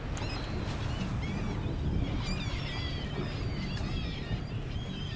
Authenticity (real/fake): real